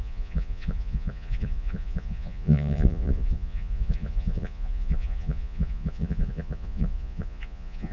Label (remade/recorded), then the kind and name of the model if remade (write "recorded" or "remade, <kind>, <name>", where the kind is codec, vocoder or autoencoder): remade, vocoder, Vocos